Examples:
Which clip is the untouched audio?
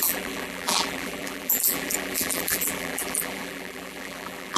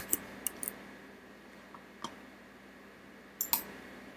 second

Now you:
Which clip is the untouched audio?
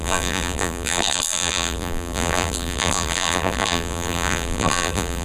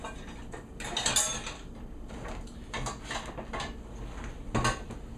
second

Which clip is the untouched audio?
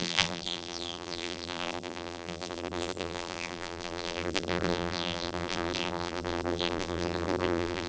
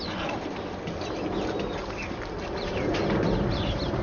second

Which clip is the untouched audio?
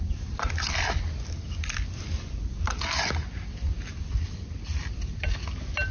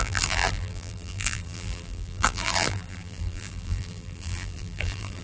first